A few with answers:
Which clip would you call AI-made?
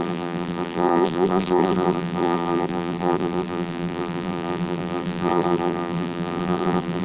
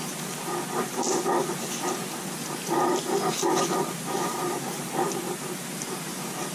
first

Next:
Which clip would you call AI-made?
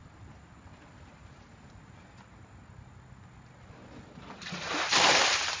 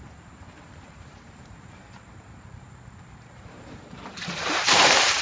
second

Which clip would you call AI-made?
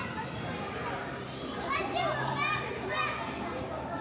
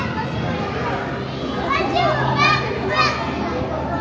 first